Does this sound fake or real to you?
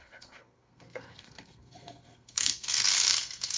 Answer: fake